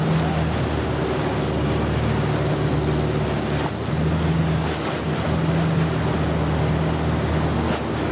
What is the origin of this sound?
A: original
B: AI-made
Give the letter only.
A